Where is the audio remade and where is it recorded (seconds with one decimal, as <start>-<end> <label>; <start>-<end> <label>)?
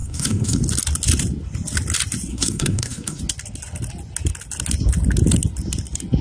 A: 0.0-0.6 remade; 0.6-2.3 recorded; 2.3-3.2 remade; 3.2-6.2 recorded